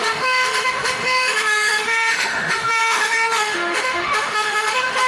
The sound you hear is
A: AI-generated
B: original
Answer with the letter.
A